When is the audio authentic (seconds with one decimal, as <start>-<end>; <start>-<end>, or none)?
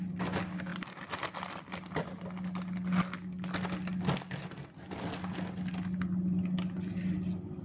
0.0-7.6